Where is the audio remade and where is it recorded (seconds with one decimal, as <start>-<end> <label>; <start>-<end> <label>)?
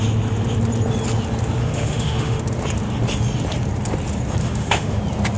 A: 0.0-1.6 recorded; 1.6-2.4 remade; 2.4-4.4 recorded; 4.4-5.0 remade; 5.0-5.4 recorded